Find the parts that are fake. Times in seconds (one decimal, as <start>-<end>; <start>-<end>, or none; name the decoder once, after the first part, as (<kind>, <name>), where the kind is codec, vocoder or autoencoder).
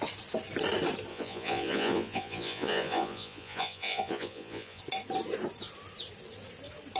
1.1-4.8 (vocoder, Vocos)